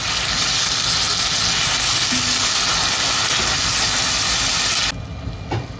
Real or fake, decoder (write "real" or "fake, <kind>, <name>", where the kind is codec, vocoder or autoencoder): real